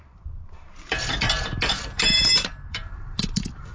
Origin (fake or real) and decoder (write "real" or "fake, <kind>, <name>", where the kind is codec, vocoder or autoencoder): fake, vocoder, BigVGAN v2